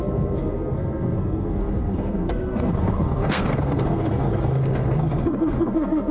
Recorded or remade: remade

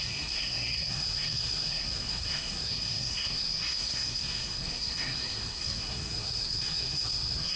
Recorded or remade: remade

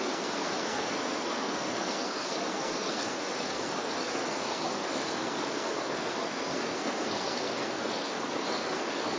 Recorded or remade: remade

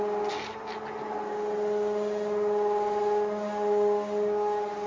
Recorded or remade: recorded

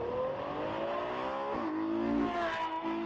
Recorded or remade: recorded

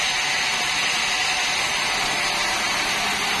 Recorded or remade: recorded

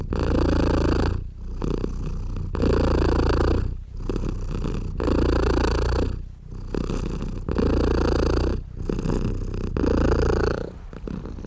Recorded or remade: recorded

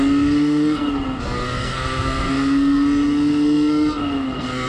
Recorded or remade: remade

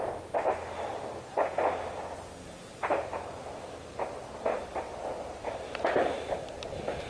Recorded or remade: recorded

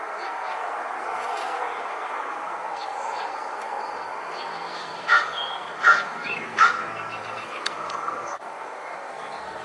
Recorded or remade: remade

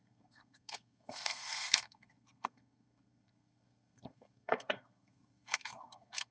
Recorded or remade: remade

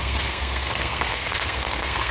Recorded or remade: remade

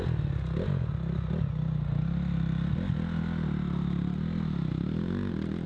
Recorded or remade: recorded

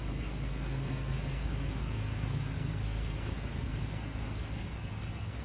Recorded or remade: remade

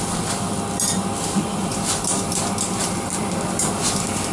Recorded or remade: recorded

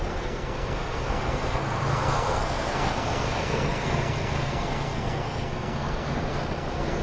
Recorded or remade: remade